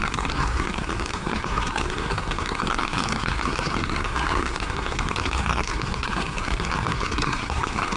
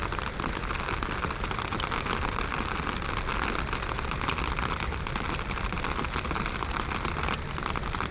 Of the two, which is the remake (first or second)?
first